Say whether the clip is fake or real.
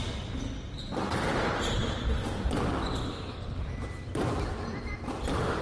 real